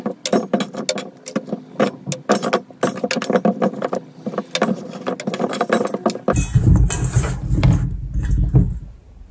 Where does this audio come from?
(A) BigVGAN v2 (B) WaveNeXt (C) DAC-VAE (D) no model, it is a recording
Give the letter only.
D